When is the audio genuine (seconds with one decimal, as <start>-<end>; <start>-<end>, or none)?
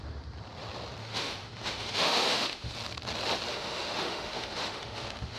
0.0-1.0; 2.7-3.5